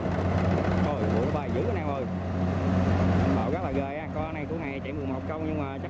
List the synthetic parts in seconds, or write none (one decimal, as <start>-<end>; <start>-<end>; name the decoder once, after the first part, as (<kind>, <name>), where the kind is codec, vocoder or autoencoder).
none